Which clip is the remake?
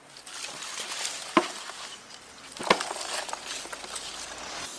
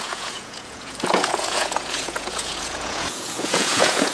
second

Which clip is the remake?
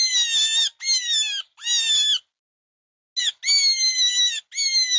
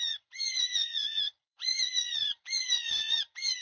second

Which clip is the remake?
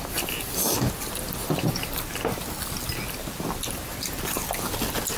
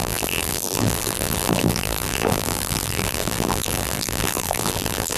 second